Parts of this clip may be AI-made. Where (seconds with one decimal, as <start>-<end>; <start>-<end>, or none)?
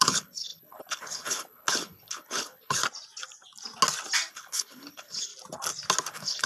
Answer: 0.0-2.8; 4.3-5.3; 6.1-6.5